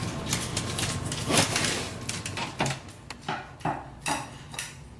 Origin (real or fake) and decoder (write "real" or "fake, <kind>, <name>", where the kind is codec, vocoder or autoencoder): real